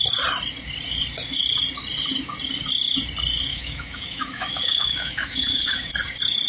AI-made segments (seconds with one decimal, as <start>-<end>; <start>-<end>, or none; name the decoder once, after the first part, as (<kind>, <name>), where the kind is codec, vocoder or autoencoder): 3.5-5.9 (autoencoder, DAC-VAE)